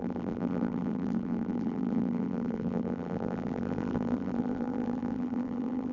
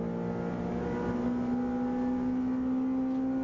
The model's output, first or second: first